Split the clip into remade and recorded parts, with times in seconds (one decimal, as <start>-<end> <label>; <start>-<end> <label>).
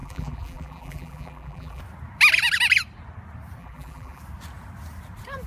0.0-1.8 remade; 1.8-3.6 recorded; 3.6-4.2 remade; 4.2-5.5 recorded